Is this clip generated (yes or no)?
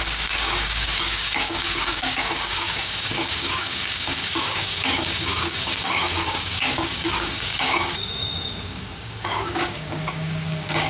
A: yes